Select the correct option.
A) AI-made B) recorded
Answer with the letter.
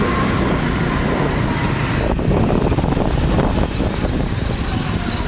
B